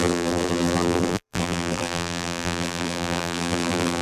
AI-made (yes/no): yes